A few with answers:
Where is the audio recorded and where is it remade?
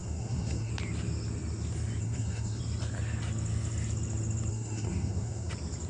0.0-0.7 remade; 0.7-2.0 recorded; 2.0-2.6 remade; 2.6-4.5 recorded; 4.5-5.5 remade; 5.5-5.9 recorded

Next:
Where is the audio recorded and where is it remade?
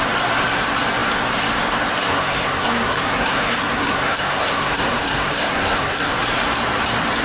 0.0-2.1 recorded; 2.1-6.1 remade; 6.1-7.2 recorded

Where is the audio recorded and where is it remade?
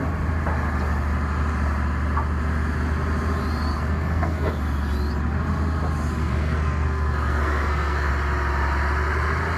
0.0-3.7 recorded; 3.7-4.6 remade; 4.6-6.2 recorded; 6.2-8.1 remade; 8.1-9.6 recorded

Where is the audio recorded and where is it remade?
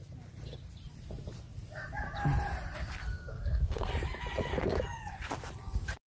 0.0-3.1 recorded; 3.1-3.9 remade; 3.9-6.1 recorded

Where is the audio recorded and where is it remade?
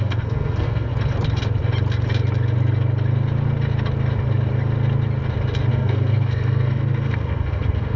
0.0-0.9 remade; 0.9-5.7 recorded; 5.7-8.0 remade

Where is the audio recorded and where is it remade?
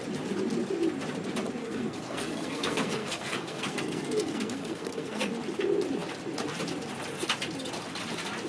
0.0-1.6 recorded; 1.6-5.4 remade; 5.4-8.5 recorded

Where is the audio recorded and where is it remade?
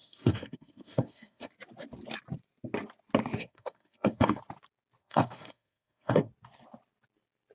0.0-1.5 remade; 1.5-3.4 recorded; 3.4-4.4 remade; 4.4-5.0 recorded; 5.0-6.3 remade; 6.3-7.5 recorded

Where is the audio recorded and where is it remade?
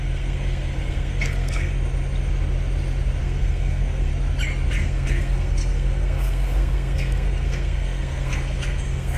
0.0-1.7 remade; 1.7-3.2 recorded; 3.2-4.1 remade; 4.1-4.7 recorded; 4.7-9.2 remade